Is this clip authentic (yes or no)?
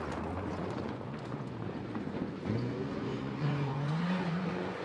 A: no